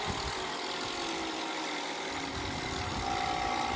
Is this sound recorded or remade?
recorded